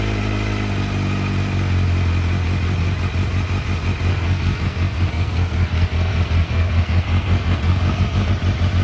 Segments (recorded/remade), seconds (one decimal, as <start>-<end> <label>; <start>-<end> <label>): 0.0-4.1 recorded; 4.1-8.3 remade; 8.3-8.8 recorded